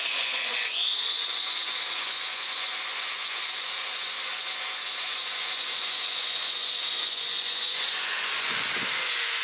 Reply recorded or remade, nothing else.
remade